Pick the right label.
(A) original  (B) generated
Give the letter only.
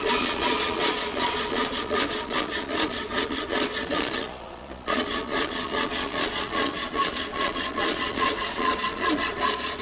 B